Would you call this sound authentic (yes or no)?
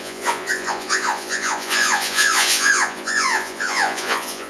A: no